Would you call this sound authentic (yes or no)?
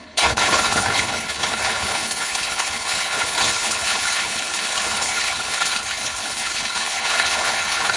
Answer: no